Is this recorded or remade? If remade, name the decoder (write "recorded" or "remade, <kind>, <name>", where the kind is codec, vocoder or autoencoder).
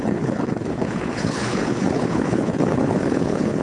remade, codec, HILCodec